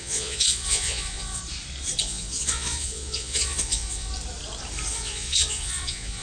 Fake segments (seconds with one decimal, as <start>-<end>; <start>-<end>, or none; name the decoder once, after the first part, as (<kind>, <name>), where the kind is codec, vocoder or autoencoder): 0.0-1.4 (vocoder, Vocos); 2.0-4.1; 4.9-6.2